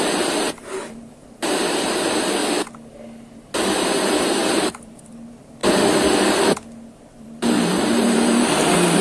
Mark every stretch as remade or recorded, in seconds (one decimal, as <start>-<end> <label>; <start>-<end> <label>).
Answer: 0.0-2.4 remade; 2.4-4.5 recorded; 4.5-5.6 remade; 5.6-7.1 recorded; 7.1-9.0 remade